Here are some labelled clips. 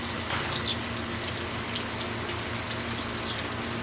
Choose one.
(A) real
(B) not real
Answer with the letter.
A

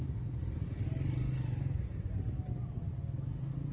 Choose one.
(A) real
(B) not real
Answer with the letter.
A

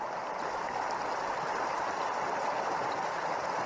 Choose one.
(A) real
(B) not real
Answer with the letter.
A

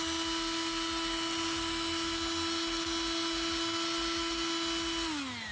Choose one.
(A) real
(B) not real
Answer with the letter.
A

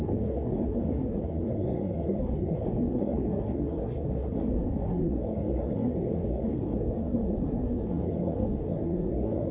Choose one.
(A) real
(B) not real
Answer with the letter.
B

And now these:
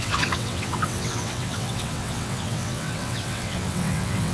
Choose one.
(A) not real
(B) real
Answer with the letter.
A